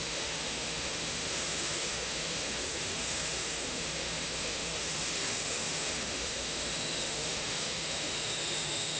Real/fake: fake